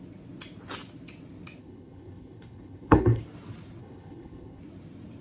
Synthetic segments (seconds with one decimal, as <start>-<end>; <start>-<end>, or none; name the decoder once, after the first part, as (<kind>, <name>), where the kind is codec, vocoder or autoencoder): 1.6-3.2 (codec, HILCodec); 3.8-4.6